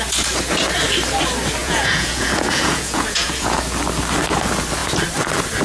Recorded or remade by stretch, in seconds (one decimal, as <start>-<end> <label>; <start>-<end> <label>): 0.0-1.6 recorded; 1.6-3.6 remade; 3.6-5.6 recorded

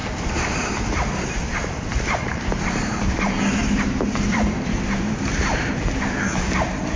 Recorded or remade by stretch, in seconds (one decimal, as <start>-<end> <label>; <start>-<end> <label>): 0.0-7.0 remade

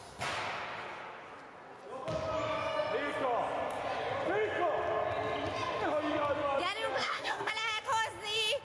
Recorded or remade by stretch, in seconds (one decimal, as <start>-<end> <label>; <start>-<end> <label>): 0.0-7.0 recorded; 7.0-7.5 remade; 7.5-8.6 recorded

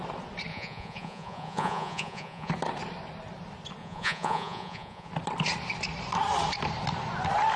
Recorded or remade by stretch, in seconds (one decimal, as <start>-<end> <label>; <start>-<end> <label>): 0.0-0.5 recorded; 0.5-2.5 remade; 2.5-3.8 recorded; 3.8-5.1 remade; 5.1-7.6 recorded

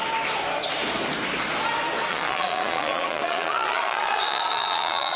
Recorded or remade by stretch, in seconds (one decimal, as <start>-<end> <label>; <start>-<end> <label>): 0.0-2.1 recorded; 2.1-5.2 remade

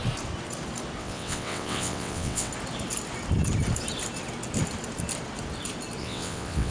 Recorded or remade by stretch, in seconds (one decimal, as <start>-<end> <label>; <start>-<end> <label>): 0.0-1.0 recorded; 1.0-2.5 remade; 2.5-6.0 recorded; 6.0-6.7 remade

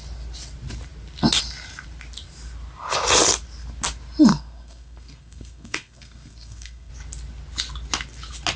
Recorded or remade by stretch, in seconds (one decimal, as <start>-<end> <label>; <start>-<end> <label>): 0.0-4.3 recorded; 4.3-6.9 remade; 6.9-8.6 recorded